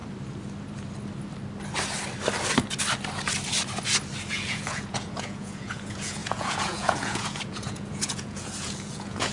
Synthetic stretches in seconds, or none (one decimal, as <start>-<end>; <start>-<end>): 4.3-9.3